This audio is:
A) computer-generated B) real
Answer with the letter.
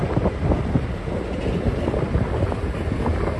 B